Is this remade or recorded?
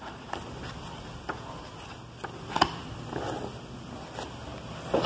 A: recorded